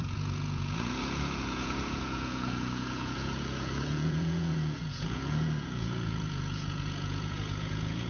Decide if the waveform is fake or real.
fake